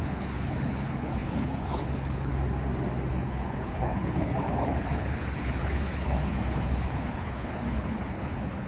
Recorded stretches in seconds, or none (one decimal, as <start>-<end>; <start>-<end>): 2.3-3.1